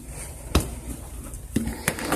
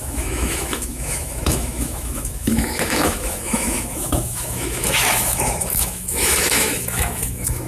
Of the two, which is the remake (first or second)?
second